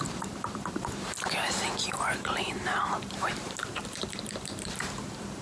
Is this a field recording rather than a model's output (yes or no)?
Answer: no